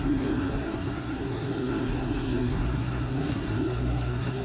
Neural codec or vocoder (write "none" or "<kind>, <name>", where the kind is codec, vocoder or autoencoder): codec, SNAC